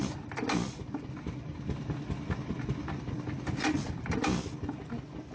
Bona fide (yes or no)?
yes